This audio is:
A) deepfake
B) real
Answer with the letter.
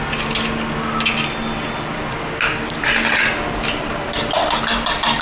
B